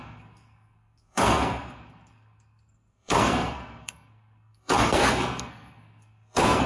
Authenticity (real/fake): fake